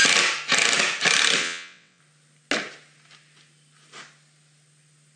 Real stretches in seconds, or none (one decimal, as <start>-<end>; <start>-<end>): 0.0-1.4; 2.0-5.2